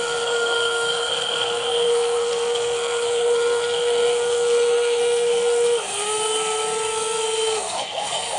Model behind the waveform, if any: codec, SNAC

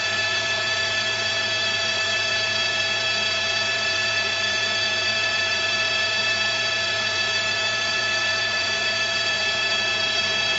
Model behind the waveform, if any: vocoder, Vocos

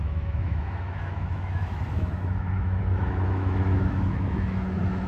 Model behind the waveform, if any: autoencoder, DAC-VAE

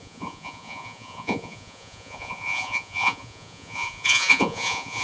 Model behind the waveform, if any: vocoder, Vocos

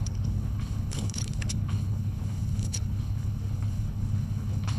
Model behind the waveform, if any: codec, HILCodec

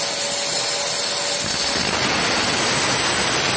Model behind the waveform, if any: none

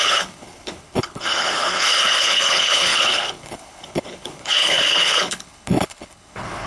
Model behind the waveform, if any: codec, HILCodec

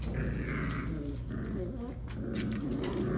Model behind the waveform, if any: none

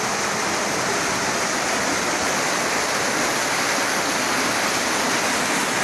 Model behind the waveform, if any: none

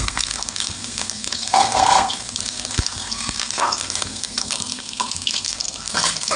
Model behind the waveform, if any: codec, SNAC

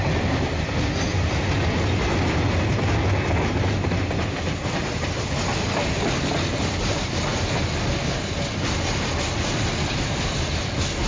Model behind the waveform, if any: none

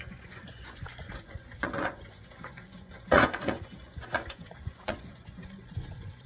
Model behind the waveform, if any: vocoder, Vocos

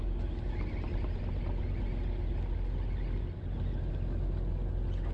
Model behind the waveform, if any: none